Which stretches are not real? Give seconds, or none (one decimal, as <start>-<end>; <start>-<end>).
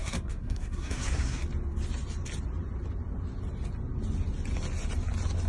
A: 0.0-1.4